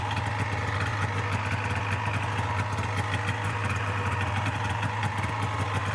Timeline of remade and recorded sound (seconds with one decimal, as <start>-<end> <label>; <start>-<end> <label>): 0.0-3.6 recorded; 3.6-5.3 remade; 5.3-5.9 recorded